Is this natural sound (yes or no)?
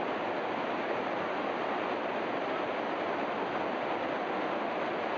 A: yes